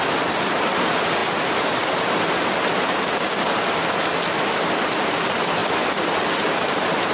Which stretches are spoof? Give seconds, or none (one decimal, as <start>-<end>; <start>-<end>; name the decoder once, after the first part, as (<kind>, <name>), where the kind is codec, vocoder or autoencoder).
none